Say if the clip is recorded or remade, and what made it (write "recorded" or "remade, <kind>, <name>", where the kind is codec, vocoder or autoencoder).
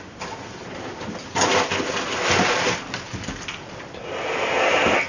recorded